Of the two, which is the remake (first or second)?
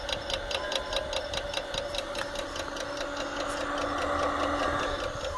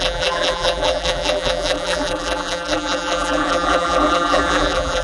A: second